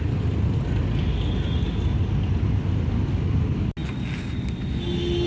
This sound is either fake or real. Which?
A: real